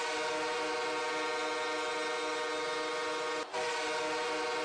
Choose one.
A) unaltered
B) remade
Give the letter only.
A